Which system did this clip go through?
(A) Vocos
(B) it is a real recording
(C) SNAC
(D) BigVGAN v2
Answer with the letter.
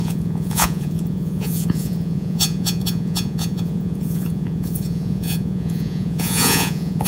A